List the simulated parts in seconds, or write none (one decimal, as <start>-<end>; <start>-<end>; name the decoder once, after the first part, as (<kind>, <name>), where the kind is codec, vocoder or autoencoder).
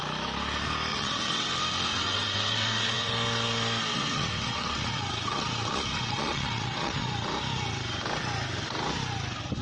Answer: 0.9-1.5 (vocoder, WaveNeXt); 1.9-3.1; 3.9-7.1